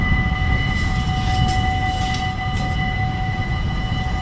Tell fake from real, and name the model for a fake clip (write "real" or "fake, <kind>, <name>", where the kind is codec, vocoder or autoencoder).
fake, vocoder, Vocos